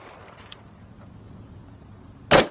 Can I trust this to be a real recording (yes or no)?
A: yes